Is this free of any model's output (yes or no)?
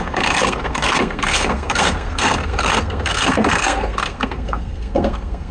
no